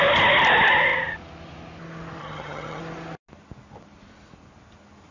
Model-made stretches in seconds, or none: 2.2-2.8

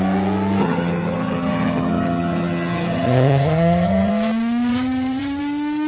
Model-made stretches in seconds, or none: 0.6-4.1; 4.7-5.4

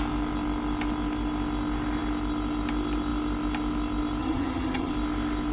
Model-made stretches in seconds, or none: 4.2-4.9

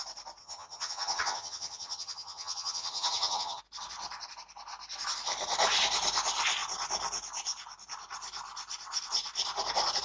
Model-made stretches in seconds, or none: 0.4-3.6

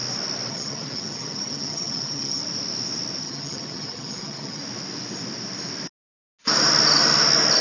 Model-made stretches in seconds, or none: 0.5-2.4; 3.2-4.6

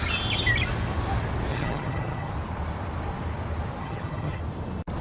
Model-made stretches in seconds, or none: 1.5-2.3; 3.8-4.4